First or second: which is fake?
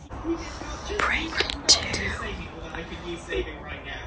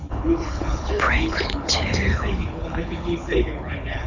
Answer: second